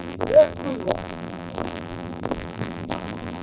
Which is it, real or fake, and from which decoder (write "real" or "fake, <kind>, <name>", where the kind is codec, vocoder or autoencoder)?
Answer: fake, vocoder, BigVGAN v2